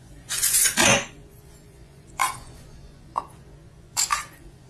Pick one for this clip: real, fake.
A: fake